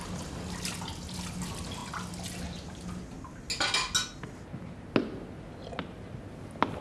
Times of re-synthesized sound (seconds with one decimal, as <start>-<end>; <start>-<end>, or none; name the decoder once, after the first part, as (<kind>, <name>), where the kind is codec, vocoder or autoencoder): none